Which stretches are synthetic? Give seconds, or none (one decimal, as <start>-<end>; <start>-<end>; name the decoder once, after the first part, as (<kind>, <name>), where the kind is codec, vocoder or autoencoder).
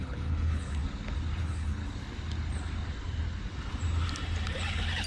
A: 0.0-0.8 (codec, HILCodec); 1.4-1.8